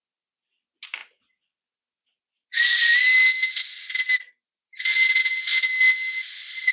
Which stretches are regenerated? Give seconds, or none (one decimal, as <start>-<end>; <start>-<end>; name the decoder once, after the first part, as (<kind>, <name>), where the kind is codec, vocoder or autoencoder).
none